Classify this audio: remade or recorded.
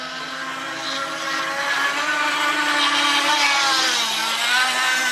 recorded